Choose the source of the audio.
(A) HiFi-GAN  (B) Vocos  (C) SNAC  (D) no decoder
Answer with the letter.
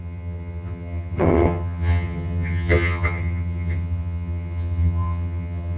A